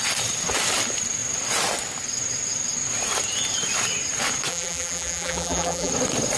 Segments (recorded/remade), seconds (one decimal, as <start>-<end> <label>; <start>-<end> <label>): 0.0-4.5 recorded; 4.5-5.9 remade; 5.9-6.4 recorded